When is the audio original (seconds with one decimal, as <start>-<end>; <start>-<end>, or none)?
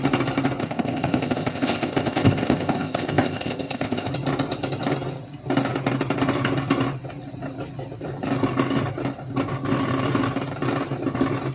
0.0-0.6; 4.1-11.5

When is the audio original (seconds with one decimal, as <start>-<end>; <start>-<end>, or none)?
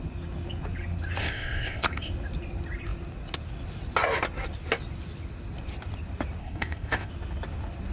0.0-1.2; 2.1-6.4; 7.1-7.9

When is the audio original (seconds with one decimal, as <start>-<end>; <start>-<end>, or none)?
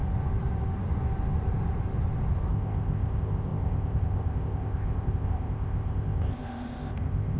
0.0-2.5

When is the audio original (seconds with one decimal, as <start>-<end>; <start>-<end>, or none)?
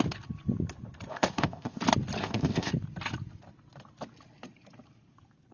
0.0-1.1; 1.8-2.2; 2.7-5.5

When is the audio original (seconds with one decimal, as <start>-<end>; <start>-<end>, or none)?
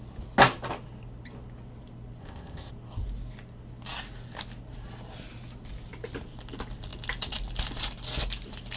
0.0-2.2; 2.7-8.8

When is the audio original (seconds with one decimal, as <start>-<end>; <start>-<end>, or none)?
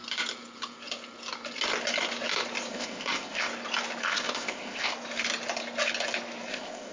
0.0-2.7; 3.5-4.0; 4.9-6.5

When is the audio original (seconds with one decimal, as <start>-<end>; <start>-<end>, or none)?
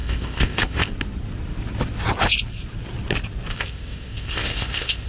0.9-3.5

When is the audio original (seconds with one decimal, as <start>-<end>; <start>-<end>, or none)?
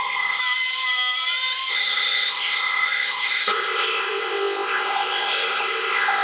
0.4-1.7